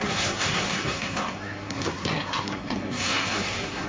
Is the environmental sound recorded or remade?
remade